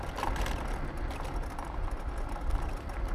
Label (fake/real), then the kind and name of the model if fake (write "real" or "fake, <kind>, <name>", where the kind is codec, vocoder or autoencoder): real